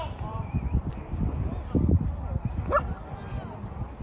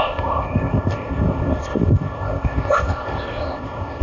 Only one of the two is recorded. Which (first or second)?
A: first